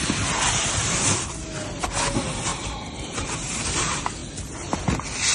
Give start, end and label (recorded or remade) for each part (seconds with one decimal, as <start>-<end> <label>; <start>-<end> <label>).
0.0-0.8 recorded; 0.8-1.4 remade; 1.4-5.3 recorded